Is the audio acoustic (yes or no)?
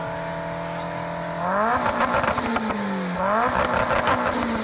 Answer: yes